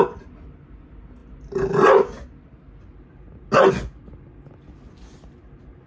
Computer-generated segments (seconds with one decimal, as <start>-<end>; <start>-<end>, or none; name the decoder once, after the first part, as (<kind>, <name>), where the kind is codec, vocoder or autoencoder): none